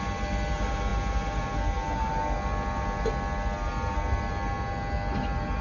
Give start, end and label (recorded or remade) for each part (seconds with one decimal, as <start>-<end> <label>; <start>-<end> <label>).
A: 0.0-5.6 recorded